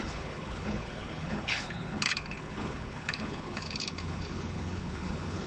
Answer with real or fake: fake